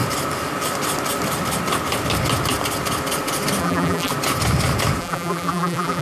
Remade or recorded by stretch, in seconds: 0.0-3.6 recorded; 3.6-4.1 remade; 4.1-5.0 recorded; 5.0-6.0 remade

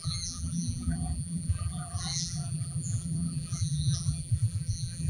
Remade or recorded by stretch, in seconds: 0.0-5.1 remade

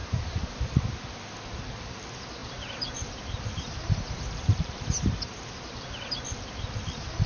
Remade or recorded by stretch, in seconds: 0.0-0.6 remade; 0.6-2.4 recorded; 2.4-6.1 remade; 6.1-7.3 recorded

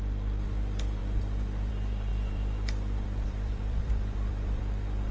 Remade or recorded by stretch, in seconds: 0.0-2.1 recorded; 2.1-4.6 remade; 4.6-5.1 recorded